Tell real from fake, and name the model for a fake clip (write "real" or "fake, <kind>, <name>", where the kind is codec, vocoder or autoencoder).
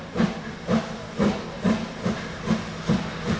real